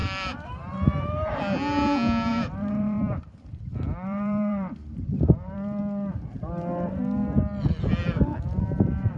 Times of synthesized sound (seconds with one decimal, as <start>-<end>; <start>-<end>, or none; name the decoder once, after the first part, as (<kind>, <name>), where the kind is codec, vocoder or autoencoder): 0.0-1.3 (vocoder, BigVGAN v2); 2.3-5.8